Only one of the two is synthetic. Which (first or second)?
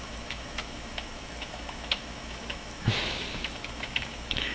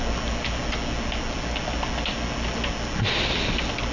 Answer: first